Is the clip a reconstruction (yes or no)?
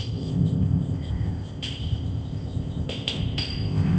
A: yes